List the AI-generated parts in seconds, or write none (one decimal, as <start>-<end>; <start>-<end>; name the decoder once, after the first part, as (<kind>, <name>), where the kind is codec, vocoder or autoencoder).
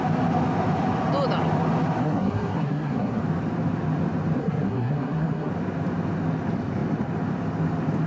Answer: 2.0-3.2 (codec, SNAC); 4.4-5.5